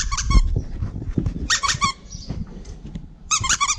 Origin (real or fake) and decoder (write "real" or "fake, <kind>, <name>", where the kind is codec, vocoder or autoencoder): fake, vocoder, BigVGAN v2